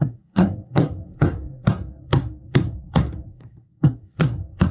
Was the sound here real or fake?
fake